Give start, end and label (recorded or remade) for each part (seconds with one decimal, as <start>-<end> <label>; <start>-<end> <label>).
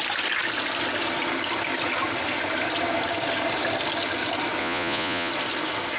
0.0-4.6 recorded; 4.6-5.3 remade; 5.3-6.0 recorded